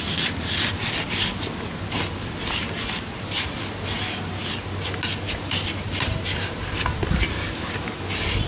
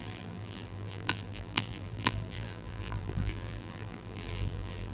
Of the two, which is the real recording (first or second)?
first